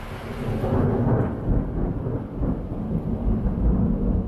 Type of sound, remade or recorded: recorded